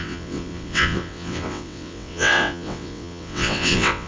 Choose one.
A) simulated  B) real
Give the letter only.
A